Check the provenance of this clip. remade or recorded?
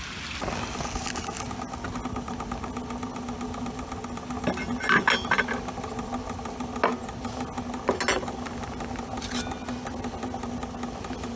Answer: recorded